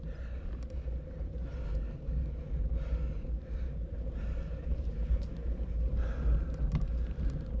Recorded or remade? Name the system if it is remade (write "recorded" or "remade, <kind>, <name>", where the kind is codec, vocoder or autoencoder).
remade, vocoder, BigVGAN v2